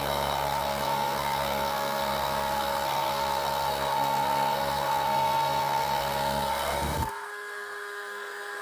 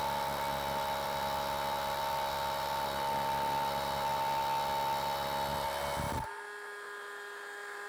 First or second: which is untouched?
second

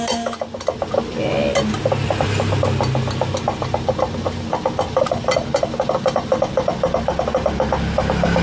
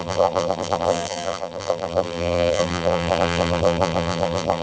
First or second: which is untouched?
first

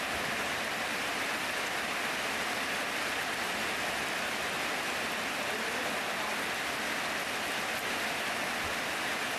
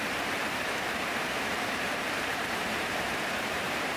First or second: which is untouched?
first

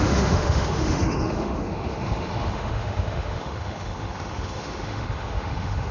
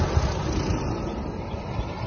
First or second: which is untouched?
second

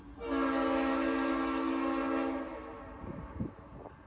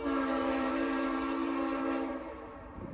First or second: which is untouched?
first